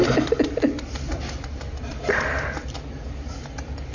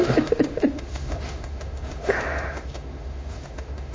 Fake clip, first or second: second